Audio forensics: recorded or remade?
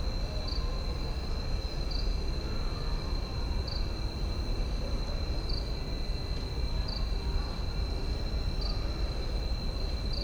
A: recorded